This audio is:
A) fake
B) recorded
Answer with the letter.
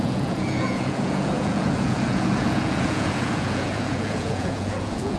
A